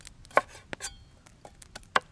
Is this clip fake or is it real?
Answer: real